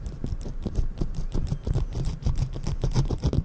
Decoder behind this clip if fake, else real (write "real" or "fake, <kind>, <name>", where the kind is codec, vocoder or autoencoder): fake, vocoder, BigVGAN v2